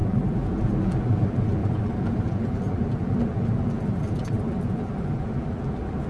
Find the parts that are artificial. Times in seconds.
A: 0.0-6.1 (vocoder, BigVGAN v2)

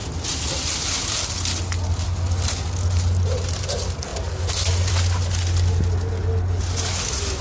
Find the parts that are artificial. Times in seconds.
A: none